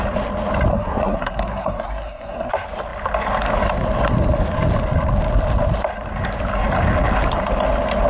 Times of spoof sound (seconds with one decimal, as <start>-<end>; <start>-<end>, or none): 0.7-2.5